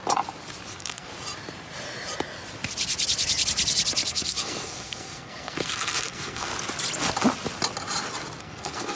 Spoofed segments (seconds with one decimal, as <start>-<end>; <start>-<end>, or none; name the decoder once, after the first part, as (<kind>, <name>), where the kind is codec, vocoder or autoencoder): 0.7-1.1 (codec, SNAC); 4.1-6.5; 8.4-9.0